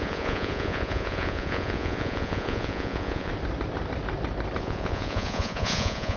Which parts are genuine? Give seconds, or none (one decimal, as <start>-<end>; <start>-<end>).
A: 3.3-4.6